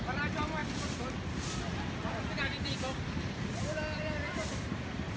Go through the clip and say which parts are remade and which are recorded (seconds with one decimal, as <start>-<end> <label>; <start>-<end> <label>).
0.0-0.6 remade; 0.6-1.9 recorded; 1.9-5.2 remade